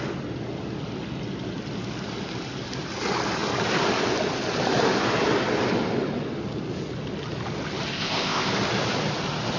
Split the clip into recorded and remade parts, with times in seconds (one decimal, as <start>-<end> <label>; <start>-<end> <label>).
0.0-7.9 recorded; 7.9-8.5 remade; 8.5-9.6 recorded